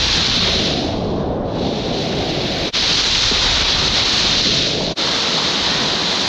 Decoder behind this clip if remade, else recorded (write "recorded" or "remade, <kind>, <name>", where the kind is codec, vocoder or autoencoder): recorded